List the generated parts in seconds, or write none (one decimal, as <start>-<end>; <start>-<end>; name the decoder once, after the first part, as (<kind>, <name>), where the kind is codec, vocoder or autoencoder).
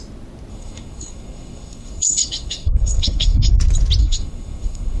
0.5-3.5 (codec, SNAC); 4.0-5.0